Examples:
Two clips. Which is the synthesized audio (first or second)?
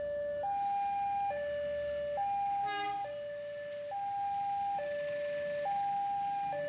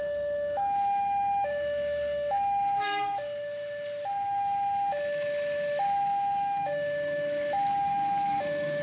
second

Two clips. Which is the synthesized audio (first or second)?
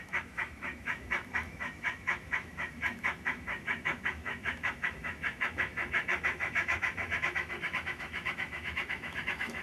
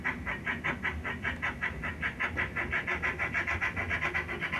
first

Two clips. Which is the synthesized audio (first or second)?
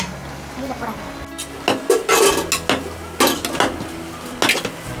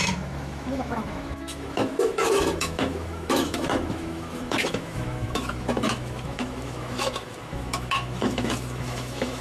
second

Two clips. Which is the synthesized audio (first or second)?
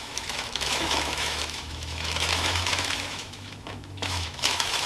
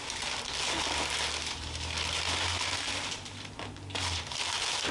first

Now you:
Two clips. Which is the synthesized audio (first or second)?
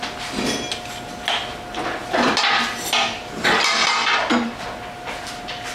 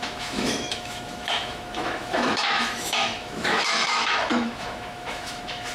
second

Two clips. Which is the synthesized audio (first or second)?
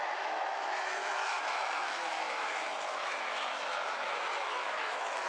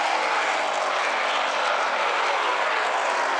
first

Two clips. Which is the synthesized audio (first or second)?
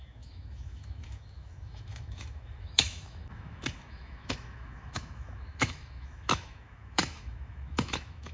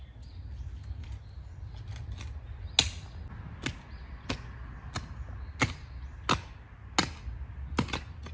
first